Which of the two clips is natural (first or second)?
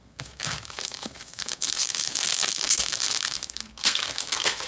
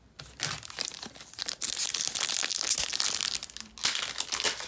second